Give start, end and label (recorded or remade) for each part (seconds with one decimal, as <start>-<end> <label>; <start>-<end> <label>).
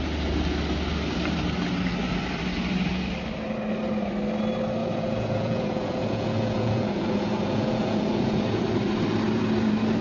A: 0.0-4.8 recorded; 4.8-8.6 remade; 8.6-10.0 recorded